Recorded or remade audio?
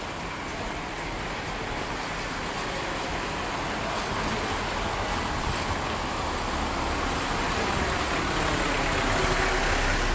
recorded